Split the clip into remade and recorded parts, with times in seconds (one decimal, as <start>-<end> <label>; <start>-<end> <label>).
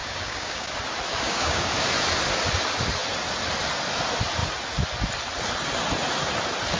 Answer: 0.0-0.7 remade; 0.7-1.1 recorded; 1.1-1.7 remade; 1.7-6.8 recorded